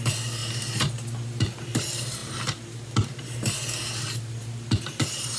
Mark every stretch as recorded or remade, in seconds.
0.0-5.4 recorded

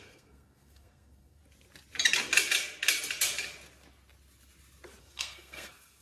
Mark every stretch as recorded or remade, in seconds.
0.0-1.4 remade; 1.4-5.0 recorded; 5.0-6.0 remade

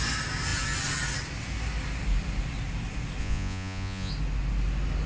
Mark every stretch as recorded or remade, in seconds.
0.0-3.2 recorded; 3.2-4.1 remade; 4.1-5.1 recorded

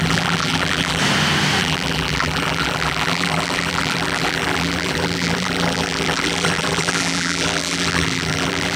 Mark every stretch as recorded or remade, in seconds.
0.0-1.0 remade; 1.0-1.6 recorded; 1.6-8.8 remade

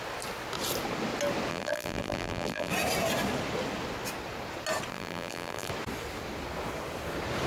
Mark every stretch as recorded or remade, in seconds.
0.0-1.5 recorded; 1.5-2.7 remade; 2.7-4.9 recorded; 4.9-5.7 remade; 5.7-7.5 recorded

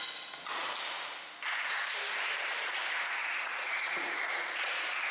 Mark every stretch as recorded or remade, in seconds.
0.0-3.2 recorded; 3.2-4.6 remade; 4.6-5.1 recorded

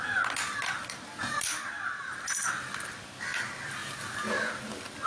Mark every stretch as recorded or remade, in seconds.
0.0-3.8 recorded; 3.8-4.5 remade; 4.5-5.1 recorded